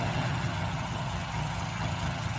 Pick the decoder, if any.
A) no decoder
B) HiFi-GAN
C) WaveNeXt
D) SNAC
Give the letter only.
B